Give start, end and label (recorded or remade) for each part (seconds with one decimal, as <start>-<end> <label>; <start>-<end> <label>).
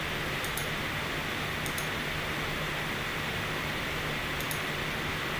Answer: 0.0-5.4 recorded